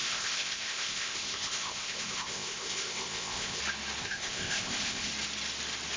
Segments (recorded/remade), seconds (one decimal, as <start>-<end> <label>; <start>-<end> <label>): 0.0-3.6 remade; 3.6-4.0 recorded; 4.0-5.1 remade; 5.1-6.0 recorded